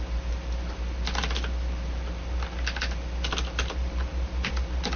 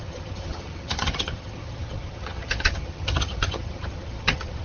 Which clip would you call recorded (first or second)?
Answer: first